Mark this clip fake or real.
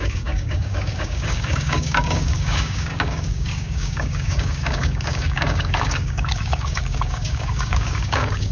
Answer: fake